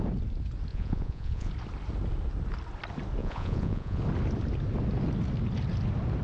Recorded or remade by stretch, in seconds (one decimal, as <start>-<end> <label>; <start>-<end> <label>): 0.0-0.7 recorded; 0.7-1.5 remade; 1.5-3.2 recorded; 3.2-4.0 remade; 4.0-6.2 recorded